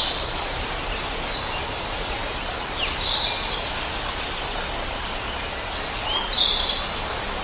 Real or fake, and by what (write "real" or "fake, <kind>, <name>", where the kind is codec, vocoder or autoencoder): real